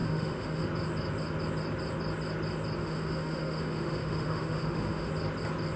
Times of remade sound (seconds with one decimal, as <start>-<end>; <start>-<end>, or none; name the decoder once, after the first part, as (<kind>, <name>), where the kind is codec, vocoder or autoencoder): 0.0-0.6 (autoencoder, DAC-VAE); 2.8-5.1